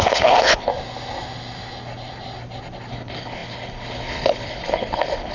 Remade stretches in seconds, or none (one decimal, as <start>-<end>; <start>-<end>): 0.0-0.7; 2.9-5.3